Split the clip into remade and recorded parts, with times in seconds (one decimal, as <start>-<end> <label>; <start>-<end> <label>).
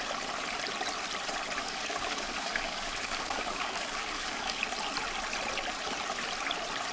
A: 0.0-1.6 recorded; 1.6-4.6 remade; 4.6-6.9 recorded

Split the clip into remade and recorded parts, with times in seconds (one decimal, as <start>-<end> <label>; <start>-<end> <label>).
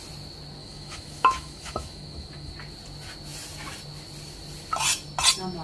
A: 0.0-0.6 recorded; 0.6-2.5 remade; 2.5-5.6 recorded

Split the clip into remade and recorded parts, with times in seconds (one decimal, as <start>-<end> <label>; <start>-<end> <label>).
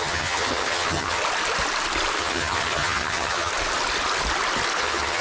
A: 0.0-1.2 remade; 1.2-2.2 recorded; 2.2-3.5 remade; 3.5-4.8 recorded; 4.8-5.2 remade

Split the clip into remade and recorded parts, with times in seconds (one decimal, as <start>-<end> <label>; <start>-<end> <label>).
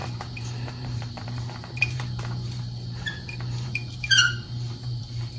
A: 0.0-1.4 remade; 1.4-1.8 recorded; 1.8-5.0 remade; 5.0-5.4 recorded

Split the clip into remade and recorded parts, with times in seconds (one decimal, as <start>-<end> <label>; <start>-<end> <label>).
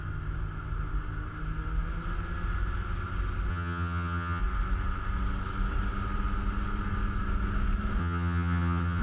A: 0.0-3.5 recorded; 3.5-4.4 remade; 4.4-8.0 recorded; 8.0-9.0 remade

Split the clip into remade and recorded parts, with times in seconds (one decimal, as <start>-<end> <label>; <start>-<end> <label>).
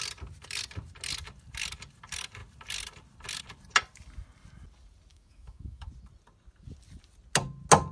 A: 0.0-5.1 recorded; 5.1-5.9 remade; 5.9-7.9 recorded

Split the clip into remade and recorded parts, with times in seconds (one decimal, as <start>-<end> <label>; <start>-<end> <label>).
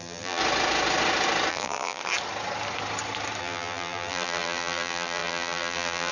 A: 0.0-0.4 remade; 0.4-1.5 recorded; 1.5-2.0 remade; 2.0-3.4 recorded; 3.4-6.1 remade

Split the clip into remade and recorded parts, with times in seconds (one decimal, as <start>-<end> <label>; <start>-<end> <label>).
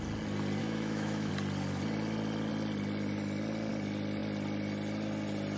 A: 0.0-0.6 recorded; 0.6-1.3 remade; 1.3-5.6 recorded